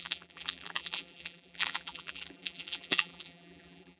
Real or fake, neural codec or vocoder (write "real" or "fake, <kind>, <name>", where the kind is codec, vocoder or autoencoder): fake, vocoder, BigVGAN v2